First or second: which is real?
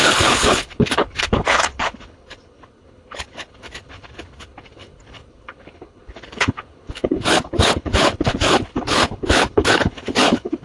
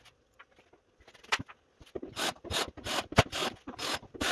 second